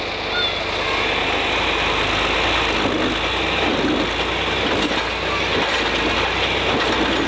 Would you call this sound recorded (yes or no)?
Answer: yes